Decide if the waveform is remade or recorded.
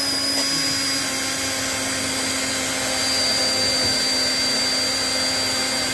recorded